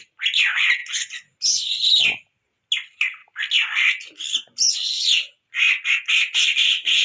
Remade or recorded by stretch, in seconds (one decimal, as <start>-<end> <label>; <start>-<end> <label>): 0.0-7.0 recorded